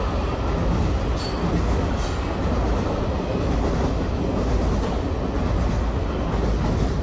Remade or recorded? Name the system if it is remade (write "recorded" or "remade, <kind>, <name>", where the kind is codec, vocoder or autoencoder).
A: recorded